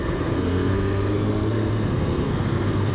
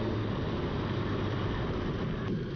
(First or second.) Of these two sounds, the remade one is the first